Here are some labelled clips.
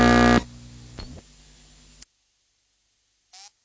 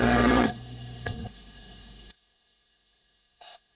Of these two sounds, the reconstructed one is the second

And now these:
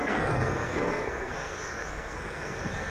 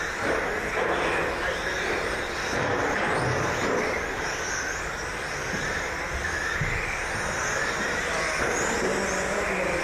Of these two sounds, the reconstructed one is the first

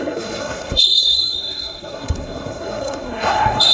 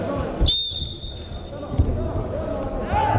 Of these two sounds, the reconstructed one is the first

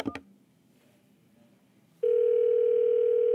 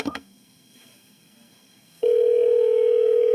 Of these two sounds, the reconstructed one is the second